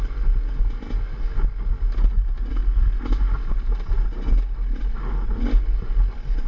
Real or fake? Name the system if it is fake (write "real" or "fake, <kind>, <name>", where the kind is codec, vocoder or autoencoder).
real